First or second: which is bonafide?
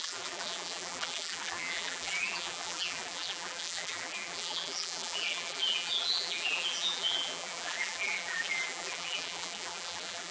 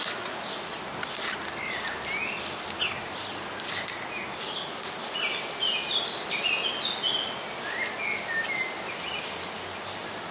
second